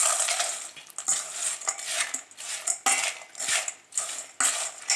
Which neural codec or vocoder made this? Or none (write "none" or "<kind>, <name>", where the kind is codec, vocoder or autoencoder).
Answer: none